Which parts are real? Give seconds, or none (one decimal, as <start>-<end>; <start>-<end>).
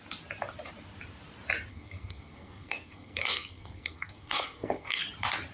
0.0-1.7; 5.0-5.5